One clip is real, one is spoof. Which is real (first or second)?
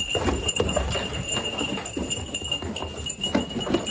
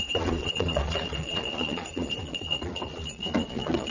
first